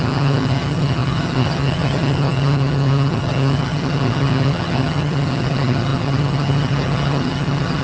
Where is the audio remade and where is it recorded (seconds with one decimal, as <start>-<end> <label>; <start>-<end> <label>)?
0.0-7.8 remade